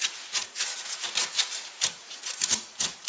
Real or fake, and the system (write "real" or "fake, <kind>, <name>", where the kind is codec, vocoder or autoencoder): fake, vocoder, Vocos